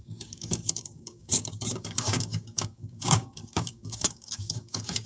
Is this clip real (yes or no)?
no